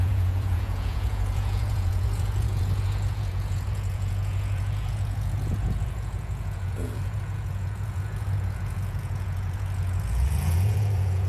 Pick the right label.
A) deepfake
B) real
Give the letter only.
A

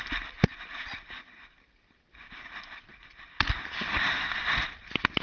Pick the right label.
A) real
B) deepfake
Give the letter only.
A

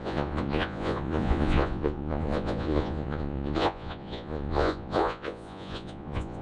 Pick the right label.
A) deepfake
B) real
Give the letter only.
A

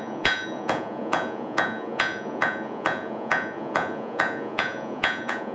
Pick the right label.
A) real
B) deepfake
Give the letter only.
B